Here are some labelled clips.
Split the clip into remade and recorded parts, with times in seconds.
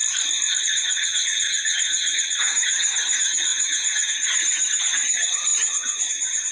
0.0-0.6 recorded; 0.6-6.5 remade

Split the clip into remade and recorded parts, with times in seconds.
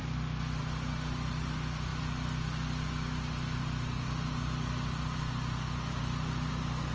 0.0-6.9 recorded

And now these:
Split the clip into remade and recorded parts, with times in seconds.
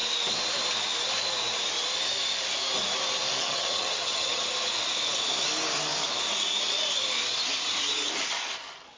0.0-3.4 recorded; 3.4-4.4 remade; 4.4-9.0 recorded